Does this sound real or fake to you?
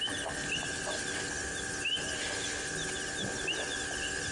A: real